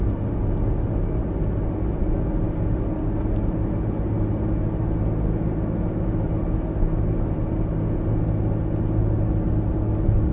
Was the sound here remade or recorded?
recorded